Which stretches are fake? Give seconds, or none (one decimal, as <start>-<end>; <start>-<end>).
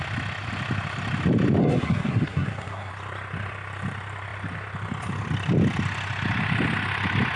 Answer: 1.6-2.9